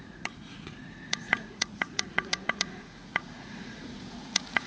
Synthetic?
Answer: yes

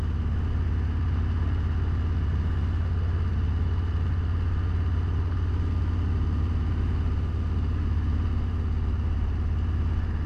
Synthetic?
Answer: no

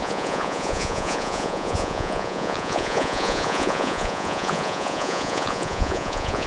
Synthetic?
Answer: yes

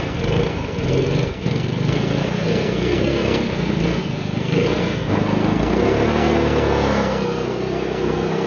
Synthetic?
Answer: yes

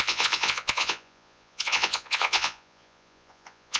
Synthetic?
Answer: yes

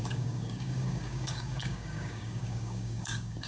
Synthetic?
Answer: yes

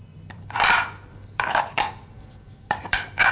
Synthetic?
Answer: yes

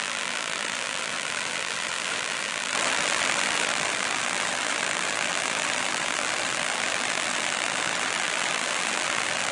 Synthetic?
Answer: yes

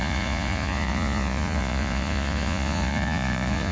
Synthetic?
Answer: yes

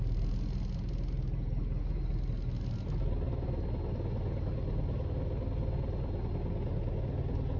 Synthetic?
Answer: no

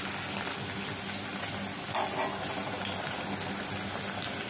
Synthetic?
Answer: no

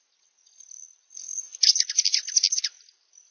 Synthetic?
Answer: no